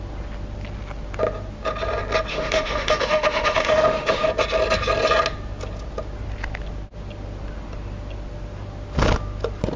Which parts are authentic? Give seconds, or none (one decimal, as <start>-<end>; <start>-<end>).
0.0-2.3; 4.3-9.8